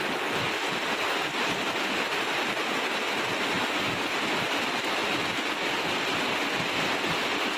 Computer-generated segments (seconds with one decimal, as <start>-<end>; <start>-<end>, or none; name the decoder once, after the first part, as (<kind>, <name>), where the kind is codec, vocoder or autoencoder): none